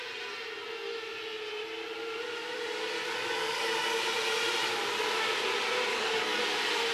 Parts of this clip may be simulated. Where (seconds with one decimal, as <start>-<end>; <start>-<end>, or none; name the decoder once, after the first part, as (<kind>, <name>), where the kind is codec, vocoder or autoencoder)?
3.0-4.0 (codec, DAC); 5.9-6.4